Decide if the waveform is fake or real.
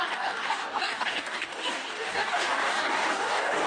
fake